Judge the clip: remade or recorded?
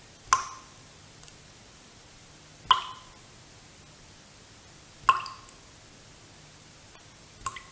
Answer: recorded